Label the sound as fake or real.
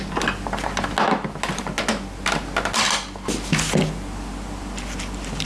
real